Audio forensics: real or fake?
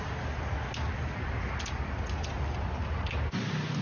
real